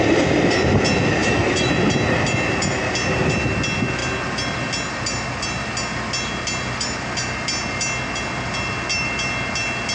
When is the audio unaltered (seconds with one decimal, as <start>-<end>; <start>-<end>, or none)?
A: 0.0-1.2; 1.7-9.9